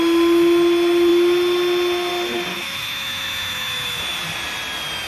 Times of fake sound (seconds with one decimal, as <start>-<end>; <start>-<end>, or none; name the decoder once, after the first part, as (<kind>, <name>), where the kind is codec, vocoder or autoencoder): 2.5-4.0 (autoencoder, DAC-VAE)